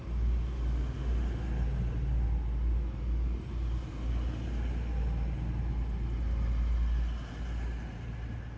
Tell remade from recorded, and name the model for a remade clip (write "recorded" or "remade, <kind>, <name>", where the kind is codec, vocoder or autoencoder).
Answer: recorded